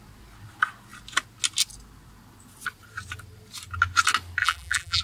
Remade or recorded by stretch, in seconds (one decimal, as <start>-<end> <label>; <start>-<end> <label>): 0.0-4.4 recorded; 4.4-5.0 remade